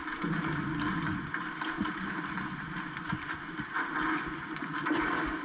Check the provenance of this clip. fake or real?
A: real